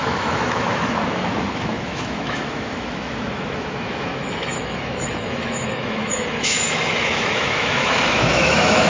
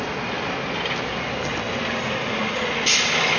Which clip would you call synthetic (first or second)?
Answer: first